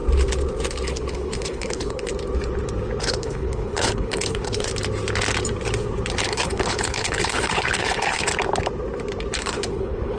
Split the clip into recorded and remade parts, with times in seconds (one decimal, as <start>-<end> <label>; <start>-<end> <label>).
0.0-0.9 recorded; 0.9-2.1 remade; 2.1-3.0 recorded; 3.0-4.7 remade; 4.7-6.2 recorded; 6.2-8.3 remade; 8.3-9.4 recorded; 9.4-10.2 remade